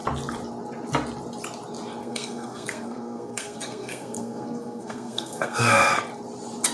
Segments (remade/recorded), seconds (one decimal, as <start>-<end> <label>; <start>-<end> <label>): 0.0-2.0 recorded; 2.0-6.0 remade; 6.0-6.7 recorded